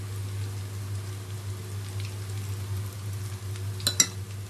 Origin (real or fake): real